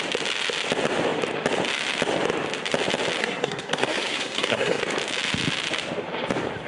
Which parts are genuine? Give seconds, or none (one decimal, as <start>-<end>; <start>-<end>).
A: 0.0-3.2; 4.8-6.7